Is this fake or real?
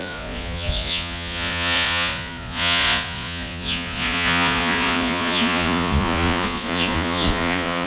fake